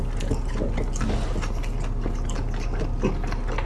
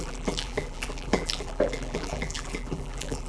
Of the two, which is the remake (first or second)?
second